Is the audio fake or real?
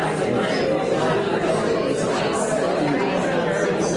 real